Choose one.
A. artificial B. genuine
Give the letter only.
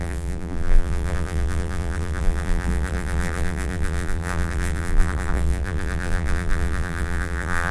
A